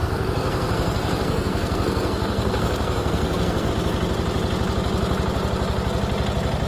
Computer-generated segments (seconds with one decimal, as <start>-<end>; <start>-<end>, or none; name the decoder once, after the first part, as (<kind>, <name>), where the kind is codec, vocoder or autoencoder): 0.0-3.7 (codec, SNAC)